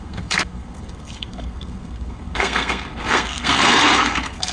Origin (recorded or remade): remade